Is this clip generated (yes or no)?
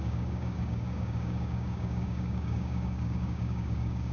yes